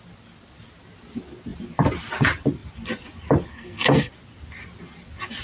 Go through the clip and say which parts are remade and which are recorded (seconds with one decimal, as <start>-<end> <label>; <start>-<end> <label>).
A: 0.0-3.5 recorded; 3.5-4.1 remade; 4.1-5.4 recorded